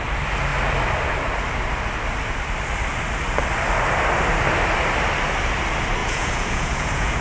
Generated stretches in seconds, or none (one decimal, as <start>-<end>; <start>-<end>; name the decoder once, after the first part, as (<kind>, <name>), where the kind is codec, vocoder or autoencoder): 6.0-7.2 (vocoder, Vocos)